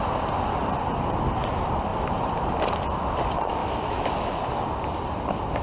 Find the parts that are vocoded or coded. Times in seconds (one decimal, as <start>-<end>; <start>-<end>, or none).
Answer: 3.6-4.4